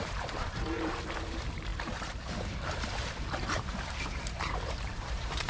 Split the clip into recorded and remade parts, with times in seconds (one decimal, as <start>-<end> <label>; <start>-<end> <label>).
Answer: 0.0-5.5 remade

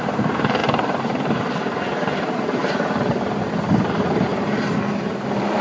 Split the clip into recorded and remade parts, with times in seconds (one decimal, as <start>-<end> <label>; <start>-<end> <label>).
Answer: 0.0-4.3 remade; 4.3-5.6 recorded

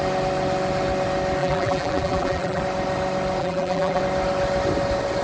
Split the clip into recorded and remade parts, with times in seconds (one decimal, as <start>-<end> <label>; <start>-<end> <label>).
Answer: 0.0-1.4 recorded; 1.4-2.6 remade; 2.6-3.4 recorded; 3.4-4.0 remade; 4.0-5.2 recorded

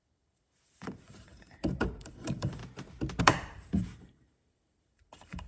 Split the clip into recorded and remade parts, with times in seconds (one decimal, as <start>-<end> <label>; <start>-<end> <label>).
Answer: 0.0-2.6 remade; 2.6-3.2 recorded; 3.2-5.5 remade

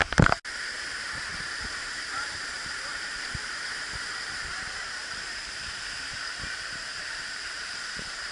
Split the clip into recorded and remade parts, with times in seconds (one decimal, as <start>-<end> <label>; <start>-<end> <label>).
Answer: 0.0-1.3 recorded; 1.3-6.2 remade; 6.2-6.9 recorded; 6.9-8.3 remade

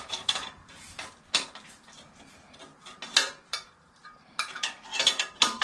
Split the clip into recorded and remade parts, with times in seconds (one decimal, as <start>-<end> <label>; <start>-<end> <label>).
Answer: 0.0-0.6 remade; 0.6-2.9 recorded; 2.9-5.6 remade

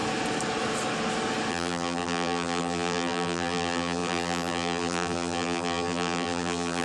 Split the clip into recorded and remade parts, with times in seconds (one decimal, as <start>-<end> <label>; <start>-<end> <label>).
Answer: 0.0-1.5 recorded; 1.5-6.8 remade